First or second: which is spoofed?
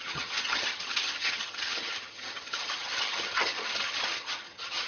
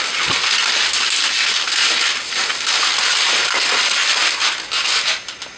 first